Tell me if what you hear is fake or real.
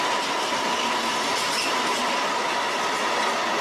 real